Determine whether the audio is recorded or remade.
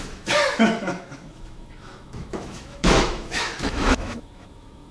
remade